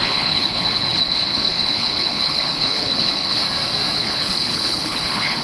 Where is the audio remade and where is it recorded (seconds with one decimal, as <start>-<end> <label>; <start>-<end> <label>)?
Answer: 0.0-3.4 remade; 3.4-4.0 recorded; 4.0-5.4 remade